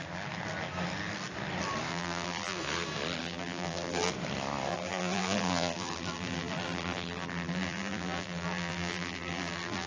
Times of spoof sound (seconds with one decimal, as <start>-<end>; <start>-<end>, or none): 1.9-2.6; 3.2-4.1; 4.7-9.9